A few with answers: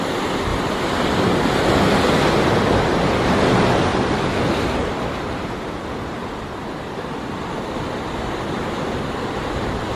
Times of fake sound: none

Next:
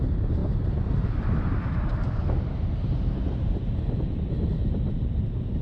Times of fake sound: 0.4-3.8

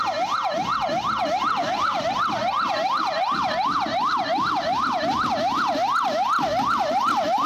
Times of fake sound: 1.2-5.7

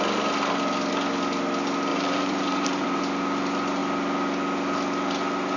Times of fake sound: 1.9-3.0

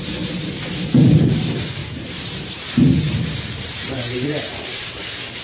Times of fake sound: 1.8-5.0